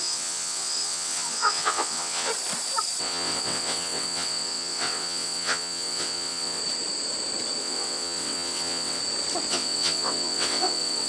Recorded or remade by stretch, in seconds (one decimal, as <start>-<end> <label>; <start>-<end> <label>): 0.0-2.3 remade; 2.3-3.0 recorded; 3.0-6.6 remade; 6.6-7.6 recorded; 7.6-9.0 remade; 9.0-9.5 recorded; 9.5-11.1 remade